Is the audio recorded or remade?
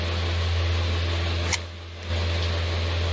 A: recorded